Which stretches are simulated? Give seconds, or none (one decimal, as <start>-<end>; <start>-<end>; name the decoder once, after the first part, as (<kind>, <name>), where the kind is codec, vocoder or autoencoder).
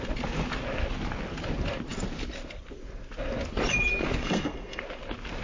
4.2-4.8 (codec, SNAC)